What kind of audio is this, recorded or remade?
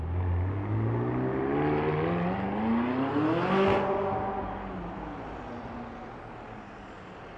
recorded